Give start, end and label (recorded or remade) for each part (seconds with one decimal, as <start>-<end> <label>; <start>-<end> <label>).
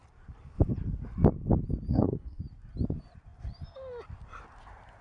0.0-1.9 recorded; 1.9-2.4 remade; 2.4-5.0 recorded